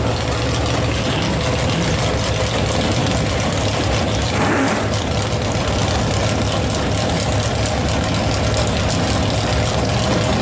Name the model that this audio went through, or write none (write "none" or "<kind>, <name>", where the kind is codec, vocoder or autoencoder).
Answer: none